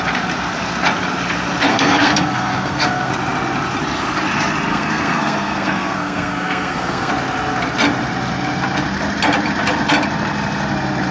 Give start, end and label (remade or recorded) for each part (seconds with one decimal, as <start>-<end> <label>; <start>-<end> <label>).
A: 0.0-1.7 recorded; 1.7-3.1 remade; 3.1-4.7 recorded; 4.7-7.1 remade; 7.1-11.1 recorded